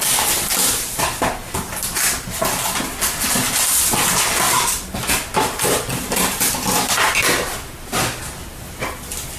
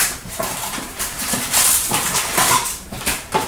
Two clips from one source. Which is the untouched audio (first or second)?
first